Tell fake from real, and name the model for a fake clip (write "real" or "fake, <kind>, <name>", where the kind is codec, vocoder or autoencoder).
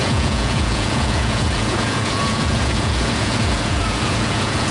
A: fake, vocoder, Vocos